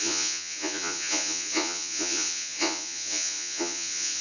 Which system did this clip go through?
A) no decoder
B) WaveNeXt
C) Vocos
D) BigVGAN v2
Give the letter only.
C